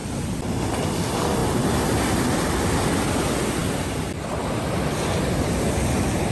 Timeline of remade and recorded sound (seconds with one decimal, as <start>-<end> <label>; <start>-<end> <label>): 0.0-6.3 recorded